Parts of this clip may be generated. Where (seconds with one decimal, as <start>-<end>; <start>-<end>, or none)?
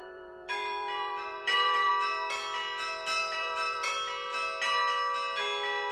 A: 0.0-1.9; 3.2-3.9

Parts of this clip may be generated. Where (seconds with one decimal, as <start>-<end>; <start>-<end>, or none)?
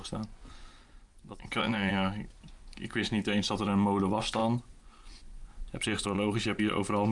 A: 0.4-1.9; 4.4-6.6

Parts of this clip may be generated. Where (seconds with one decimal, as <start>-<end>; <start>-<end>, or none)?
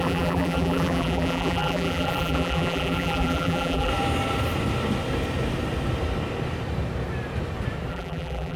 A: 0.0-3.9; 7.9-8.6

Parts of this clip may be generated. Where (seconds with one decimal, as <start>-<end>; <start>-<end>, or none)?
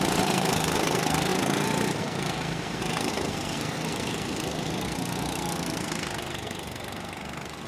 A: 0.0-7.7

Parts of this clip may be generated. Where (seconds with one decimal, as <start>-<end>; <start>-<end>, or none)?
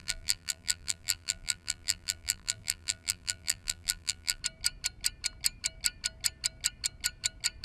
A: 0.0-4.4